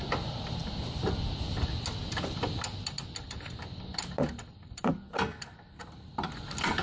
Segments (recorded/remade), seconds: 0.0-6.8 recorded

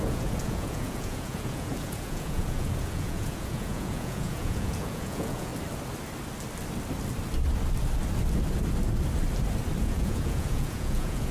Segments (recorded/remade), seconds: 0.0-5.5 remade; 5.5-9.8 recorded; 9.8-11.3 remade

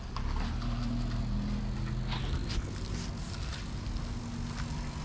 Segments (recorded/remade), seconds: 0.0-5.0 recorded

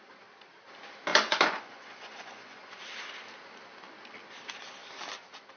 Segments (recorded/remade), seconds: 0.0-1.1 recorded; 1.1-2.8 remade; 2.8-5.6 recorded

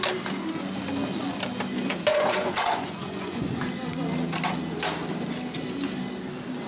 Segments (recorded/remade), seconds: 0.0-2.1 recorded; 2.1-3.6 remade; 3.6-6.7 recorded

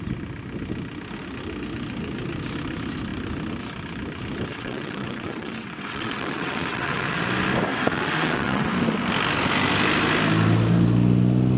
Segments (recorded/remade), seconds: 0.0-4.5 recorded; 4.5-7.2 remade; 7.2-7.7 recorded; 7.7-8.7 remade; 8.7-11.6 recorded

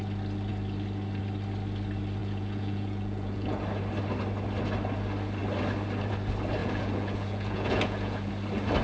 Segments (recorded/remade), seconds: 0.0-2.2 recorded; 2.2-3.6 remade; 3.6-6.6 recorded; 6.6-8.3 remade; 8.3-8.8 recorded

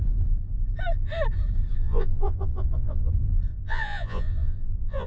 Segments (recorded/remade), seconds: 0.0-1.7 recorded; 1.7-3.1 remade; 3.1-3.5 recorded; 3.5-5.1 remade